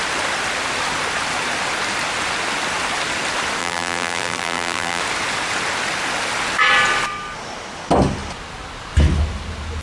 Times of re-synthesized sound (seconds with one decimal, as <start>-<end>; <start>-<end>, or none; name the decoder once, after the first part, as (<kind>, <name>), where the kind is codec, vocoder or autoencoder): 3.6-5.0 (vocoder, BigVGAN v2)